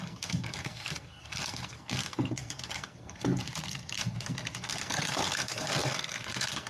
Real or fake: fake